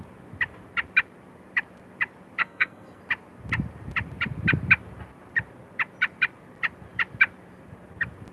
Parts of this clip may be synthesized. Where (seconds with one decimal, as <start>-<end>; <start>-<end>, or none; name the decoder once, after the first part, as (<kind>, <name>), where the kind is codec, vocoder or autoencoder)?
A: 2.4-3.0 (codec, SNAC)